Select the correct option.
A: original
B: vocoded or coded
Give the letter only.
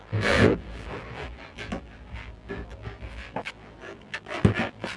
B